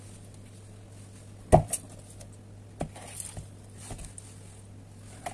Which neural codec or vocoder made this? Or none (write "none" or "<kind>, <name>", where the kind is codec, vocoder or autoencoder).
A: none